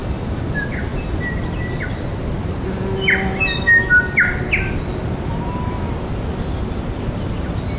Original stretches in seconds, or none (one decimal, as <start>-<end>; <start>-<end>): 0.5-7.8